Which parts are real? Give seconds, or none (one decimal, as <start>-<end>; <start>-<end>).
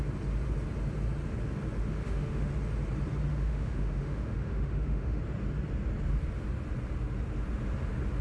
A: 0.0-1.9; 2.5-3.3; 5.2-8.2